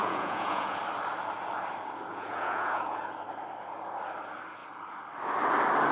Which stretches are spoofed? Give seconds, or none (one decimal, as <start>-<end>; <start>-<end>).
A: 0.0-0.8; 2.1-3.0